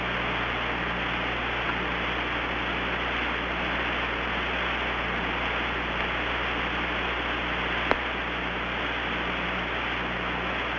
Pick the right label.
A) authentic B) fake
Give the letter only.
A